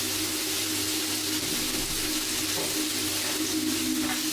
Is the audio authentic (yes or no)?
yes